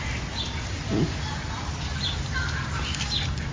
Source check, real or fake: real